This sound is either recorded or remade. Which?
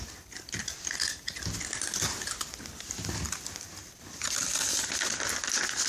recorded